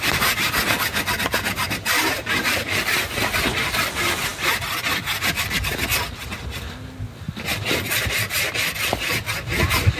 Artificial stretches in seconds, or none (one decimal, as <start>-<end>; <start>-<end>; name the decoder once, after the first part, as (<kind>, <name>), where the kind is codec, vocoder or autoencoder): 2.0-2.6 (vocoder, BigVGAN v2)